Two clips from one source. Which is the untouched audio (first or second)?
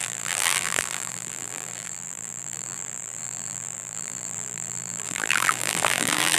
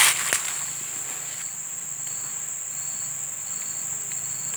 second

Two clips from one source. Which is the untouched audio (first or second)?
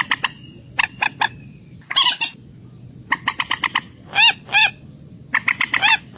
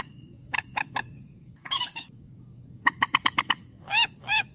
first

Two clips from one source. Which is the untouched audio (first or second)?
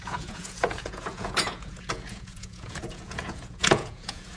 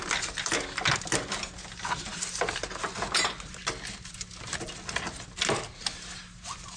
second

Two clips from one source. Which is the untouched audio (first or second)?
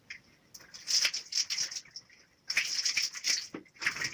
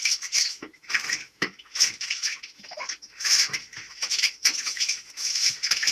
first